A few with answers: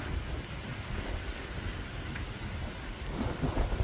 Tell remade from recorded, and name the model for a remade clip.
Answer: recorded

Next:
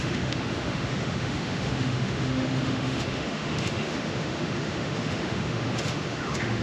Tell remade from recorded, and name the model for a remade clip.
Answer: remade, autoencoder, DAC-VAE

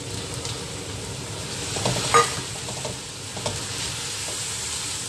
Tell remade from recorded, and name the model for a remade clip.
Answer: recorded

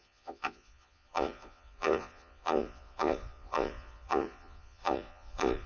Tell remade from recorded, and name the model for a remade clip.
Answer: remade, vocoder, Vocos